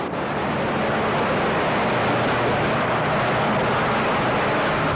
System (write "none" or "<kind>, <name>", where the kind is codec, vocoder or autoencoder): none